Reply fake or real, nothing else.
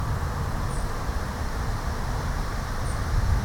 fake